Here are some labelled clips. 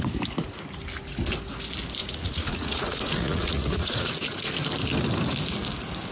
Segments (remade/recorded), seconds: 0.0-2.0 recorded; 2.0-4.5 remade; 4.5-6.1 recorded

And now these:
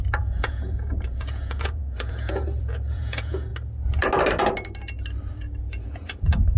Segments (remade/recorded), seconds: 0.0-3.5 remade; 3.5-5.3 recorded; 5.3-6.6 remade

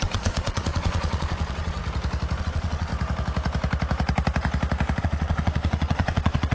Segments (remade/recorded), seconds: 0.0-1.8 remade; 1.8-2.4 recorded; 2.4-2.9 remade; 2.9-5.0 recorded; 5.0-6.5 remade

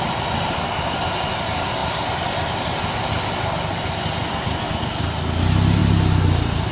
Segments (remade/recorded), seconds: 0.0-6.7 recorded

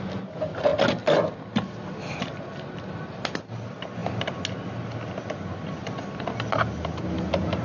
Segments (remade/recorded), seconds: 0.0-7.6 recorded

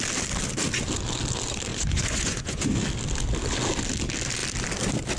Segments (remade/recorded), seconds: 0.0-1.7 recorded; 1.7-2.6 remade; 2.6-5.2 recorded

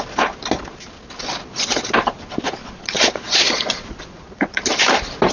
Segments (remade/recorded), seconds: 0.0-2.6 recorded; 2.6-4.6 remade; 4.6-5.3 recorded

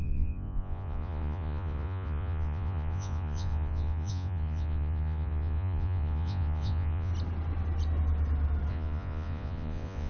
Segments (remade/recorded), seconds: 0.0-7.1 remade; 7.1-8.7 recorded; 8.7-10.1 remade